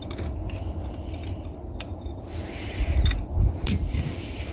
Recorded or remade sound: recorded